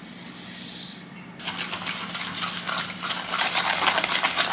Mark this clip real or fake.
real